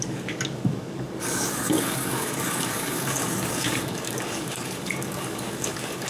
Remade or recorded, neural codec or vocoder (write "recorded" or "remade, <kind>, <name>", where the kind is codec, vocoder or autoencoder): remade, codec, DAC